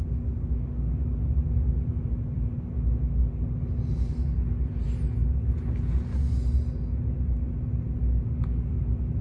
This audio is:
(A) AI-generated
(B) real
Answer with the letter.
B